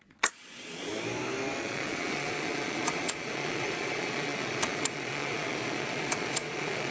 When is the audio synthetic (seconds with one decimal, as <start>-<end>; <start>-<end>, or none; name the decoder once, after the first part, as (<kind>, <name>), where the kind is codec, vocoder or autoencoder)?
0.0-0.9 (vocoder, Vocos); 1.6-6.9